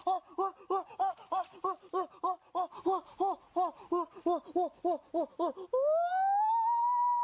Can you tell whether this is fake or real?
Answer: real